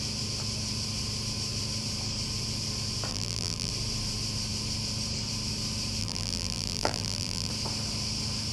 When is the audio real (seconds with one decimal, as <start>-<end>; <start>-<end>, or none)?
0.0-3.1; 3.7-6.0; 7.5-8.5